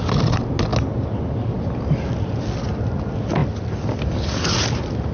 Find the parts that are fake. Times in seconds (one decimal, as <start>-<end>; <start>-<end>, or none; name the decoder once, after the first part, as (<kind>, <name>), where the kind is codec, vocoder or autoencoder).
none